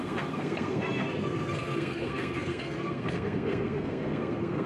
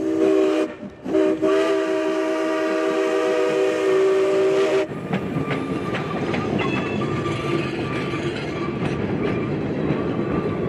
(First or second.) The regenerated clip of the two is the first